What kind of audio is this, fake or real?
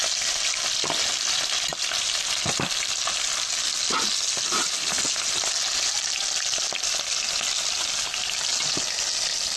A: real